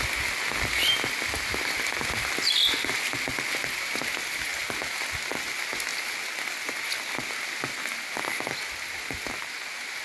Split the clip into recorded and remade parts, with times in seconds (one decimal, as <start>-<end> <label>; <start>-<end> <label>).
0.0-10.0 recorded